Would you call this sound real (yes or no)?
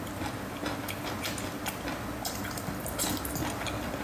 yes